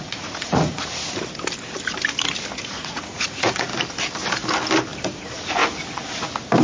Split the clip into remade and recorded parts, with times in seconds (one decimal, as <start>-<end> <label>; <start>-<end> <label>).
0.0-1.0 remade; 1.0-2.7 recorded; 2.7-3.7 remade; 3.7-5.0 recorded; 5.0-5.6 remade; 5.6-6.6 recorded